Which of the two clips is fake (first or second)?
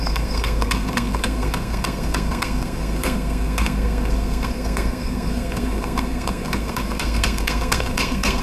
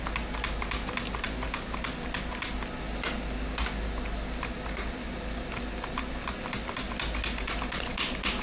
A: first